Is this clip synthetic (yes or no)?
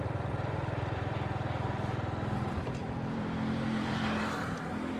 yes